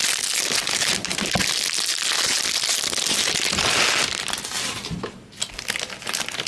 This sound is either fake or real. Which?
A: real